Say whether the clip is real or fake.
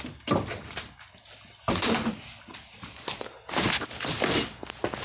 real